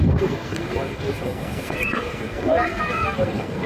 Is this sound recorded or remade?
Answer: remade